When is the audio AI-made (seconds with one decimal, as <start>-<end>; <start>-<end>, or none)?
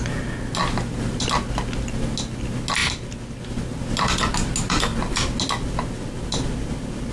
none